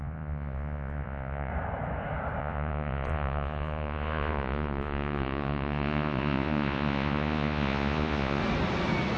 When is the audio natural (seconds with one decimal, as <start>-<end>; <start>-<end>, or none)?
1.5-2.4; 8.4-9.2